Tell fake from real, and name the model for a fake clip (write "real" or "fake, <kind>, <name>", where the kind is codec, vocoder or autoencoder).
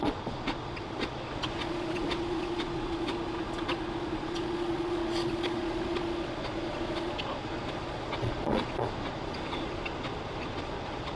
fake, vocoder, Vocos